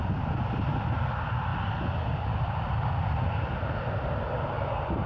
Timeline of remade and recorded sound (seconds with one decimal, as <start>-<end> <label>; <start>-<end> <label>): 0.0-5.1 recorded